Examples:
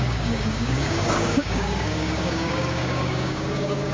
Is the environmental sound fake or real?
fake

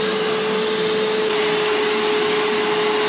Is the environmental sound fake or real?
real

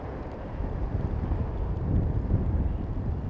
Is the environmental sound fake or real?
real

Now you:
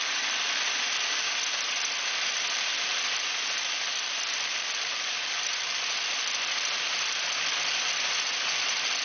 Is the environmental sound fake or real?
real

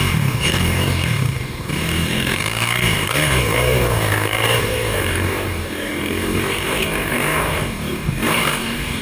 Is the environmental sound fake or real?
fake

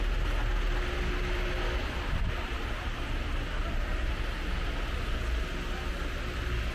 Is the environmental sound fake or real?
real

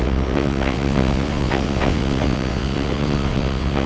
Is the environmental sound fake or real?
fake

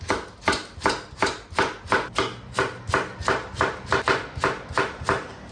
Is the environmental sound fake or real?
real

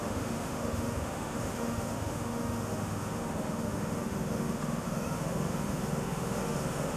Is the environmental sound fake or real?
fake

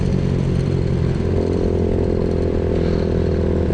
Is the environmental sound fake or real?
real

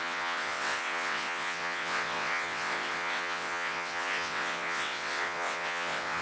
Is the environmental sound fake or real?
fake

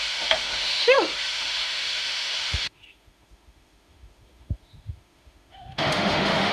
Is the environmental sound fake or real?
fake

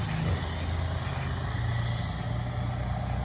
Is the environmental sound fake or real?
real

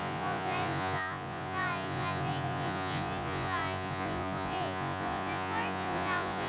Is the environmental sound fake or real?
fake